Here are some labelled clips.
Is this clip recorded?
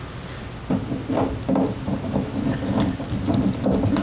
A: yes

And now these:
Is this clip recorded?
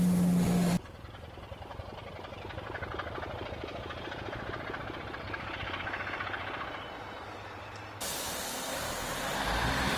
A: yes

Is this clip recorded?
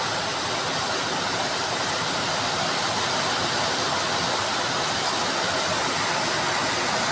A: yes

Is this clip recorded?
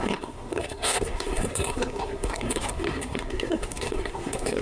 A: no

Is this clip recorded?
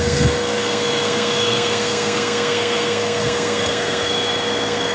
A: no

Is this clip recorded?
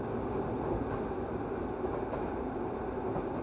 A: yes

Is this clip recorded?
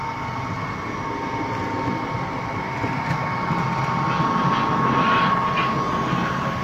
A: yes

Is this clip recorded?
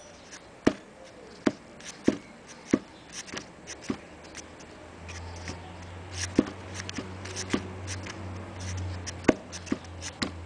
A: yes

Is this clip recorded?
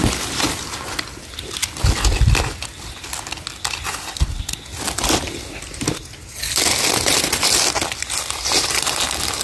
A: yes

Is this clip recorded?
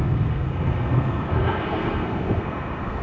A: no